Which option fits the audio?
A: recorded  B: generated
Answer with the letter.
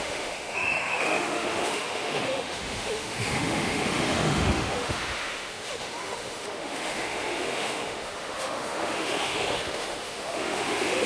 B